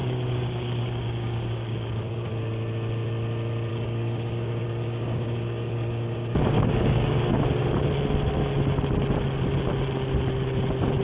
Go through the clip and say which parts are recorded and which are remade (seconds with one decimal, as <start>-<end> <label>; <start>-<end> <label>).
0.0-2.3 remade; 2.3-3.7 recorded; 3.7-7.3 remade; 7.3-11.0 recorded